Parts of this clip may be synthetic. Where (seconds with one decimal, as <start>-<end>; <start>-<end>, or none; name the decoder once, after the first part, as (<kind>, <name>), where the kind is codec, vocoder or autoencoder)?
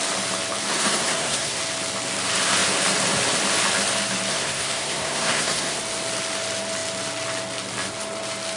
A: 0.7-1.6 (codec, SNAC); 4.3-5.8